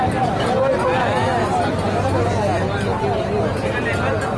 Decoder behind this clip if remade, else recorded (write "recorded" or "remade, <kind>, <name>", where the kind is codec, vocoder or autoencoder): recorded